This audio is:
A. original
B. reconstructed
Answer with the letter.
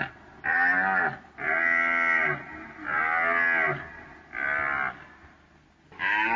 A